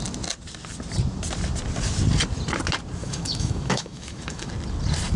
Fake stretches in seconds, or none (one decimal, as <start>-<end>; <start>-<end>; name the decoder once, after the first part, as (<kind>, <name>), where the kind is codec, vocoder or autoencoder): 3.0-4.5 (autoencoder, DAC-VAE)